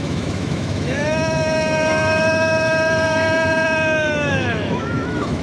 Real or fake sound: fake